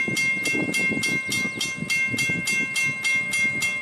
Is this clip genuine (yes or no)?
yes